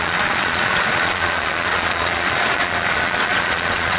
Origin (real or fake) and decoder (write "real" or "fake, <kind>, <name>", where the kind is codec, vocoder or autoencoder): fake, vocoder, Vocos